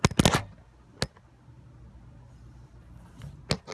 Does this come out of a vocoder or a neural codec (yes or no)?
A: no